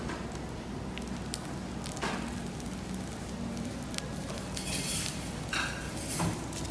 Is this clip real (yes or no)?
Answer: yes